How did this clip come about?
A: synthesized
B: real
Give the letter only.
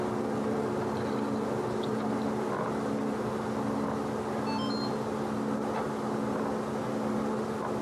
B